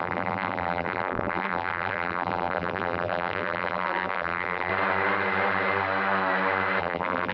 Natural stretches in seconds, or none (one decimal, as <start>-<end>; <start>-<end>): 4.7-6.8